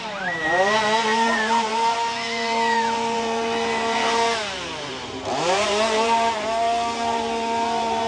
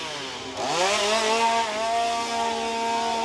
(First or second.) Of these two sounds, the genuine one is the second